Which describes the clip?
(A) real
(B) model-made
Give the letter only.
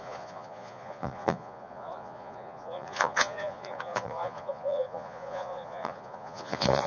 B